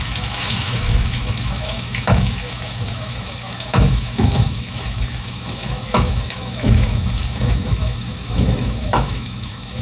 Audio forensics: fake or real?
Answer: fake